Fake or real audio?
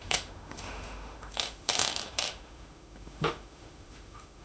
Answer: fake